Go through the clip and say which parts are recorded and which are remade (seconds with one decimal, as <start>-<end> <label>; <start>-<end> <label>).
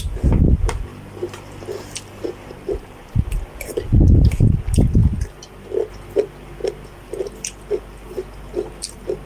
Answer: 0.0-0.9 recorded; 0.9-1.6 remade; 1.6-9.3 recorded